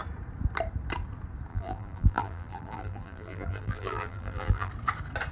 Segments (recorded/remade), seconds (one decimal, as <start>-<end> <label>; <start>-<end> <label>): 0.0-1.5 recorded; 1.5-4.7 remade; 4.7-5.3 recorded

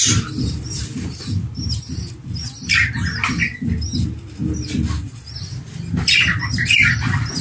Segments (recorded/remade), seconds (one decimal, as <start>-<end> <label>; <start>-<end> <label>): 0.0-7.4 recorded

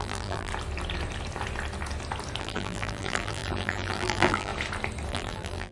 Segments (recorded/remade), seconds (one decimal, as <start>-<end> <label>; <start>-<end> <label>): 0.0-0.5 remade; 0.5-2.4 recorded; 2.4-4.5 remade; 4.5-5.1 recorded; 5.1-5.7 remade

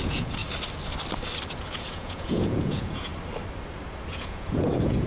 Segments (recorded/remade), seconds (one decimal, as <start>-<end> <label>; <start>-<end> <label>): 0.0-0.4 remade; 0.4-1.5 recorded; 1.5-3.1 remade; 3.1-4.1 recorded; 4.1-5.1 remade

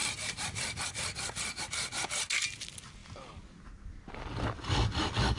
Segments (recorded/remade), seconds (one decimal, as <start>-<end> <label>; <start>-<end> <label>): 0.0-5.4 recorded